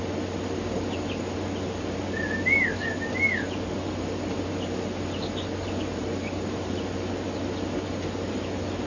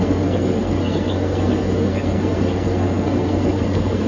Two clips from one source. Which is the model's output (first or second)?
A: second